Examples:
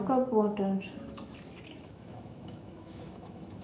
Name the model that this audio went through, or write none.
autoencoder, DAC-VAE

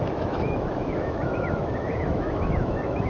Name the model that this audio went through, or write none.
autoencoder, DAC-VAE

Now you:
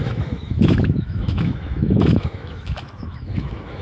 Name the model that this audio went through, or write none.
autoencoder, DAC-VAE